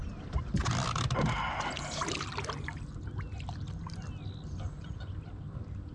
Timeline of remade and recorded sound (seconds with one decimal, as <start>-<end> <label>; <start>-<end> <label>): 0.0-5.9 recorded